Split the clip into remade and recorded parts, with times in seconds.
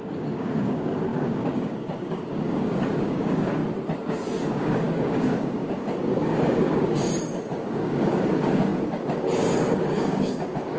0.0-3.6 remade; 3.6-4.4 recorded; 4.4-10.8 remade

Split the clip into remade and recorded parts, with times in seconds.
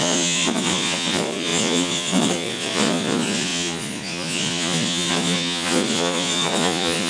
0.0-7.1 remade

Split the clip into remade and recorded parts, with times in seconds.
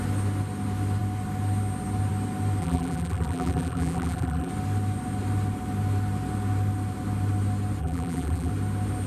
0.0-2.6 recorded; 2.6-4.5 remade; 4.5-7.8 recorded; 7.8-8.5 remade; 8.5-9.1 recorded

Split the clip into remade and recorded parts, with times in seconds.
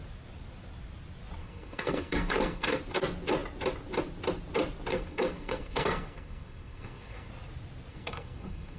0.0-1.4 recorded; 1.4-2.8 remade; 2.8-4.9 recorded; 4.9-7.3 remade; 7.3-7.9 recorded; 7.9-8.8 remade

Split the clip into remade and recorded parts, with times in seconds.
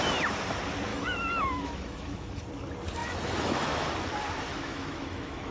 0.0-0.9 recorded; 0.9-2.4 remade; 2.4-3.0 recorded; 3.0-3.9 remade; 3.9-4.5 recorded; 4.5-5.5 remade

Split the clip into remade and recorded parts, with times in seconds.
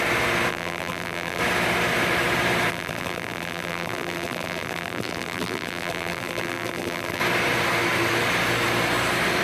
0.0-0.5 recorded; 0.5-1.4 remade; 1.4-2.7 recorded; 2.7-7.2 remade; 7.2-9.4 recorded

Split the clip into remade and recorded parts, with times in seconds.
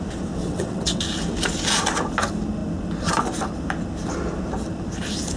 0.0-0.4 recorded; 0.4-1.0 remade; 1.0-5.4 recorded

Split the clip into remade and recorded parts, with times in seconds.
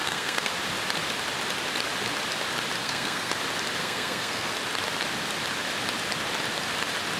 0.0-0.5 remade; 0.5-2.8 recorded; 2.8-3.3 remade; 3.3-3.8 recorded; 3.8-4.5 remade; 4.5-7.2 recorded